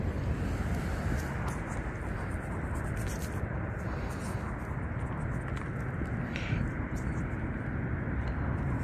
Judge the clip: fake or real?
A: real